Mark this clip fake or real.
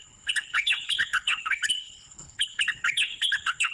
fake